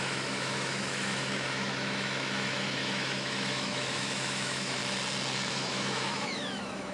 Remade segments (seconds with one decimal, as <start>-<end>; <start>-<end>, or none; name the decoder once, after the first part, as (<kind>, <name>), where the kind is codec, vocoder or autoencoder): 0.0-4.8 (autoencoder, DAC-VAE); 5.5-6.9